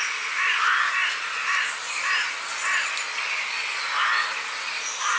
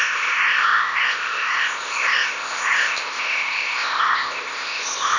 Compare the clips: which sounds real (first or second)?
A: first